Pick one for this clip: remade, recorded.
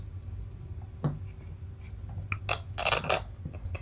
recorded